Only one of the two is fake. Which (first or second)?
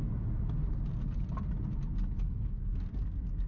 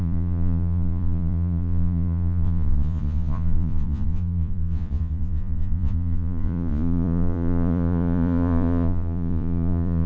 second